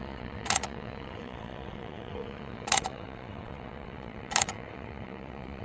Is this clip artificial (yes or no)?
yes